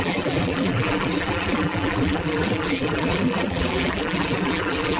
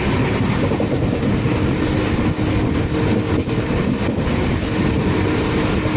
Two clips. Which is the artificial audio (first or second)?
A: first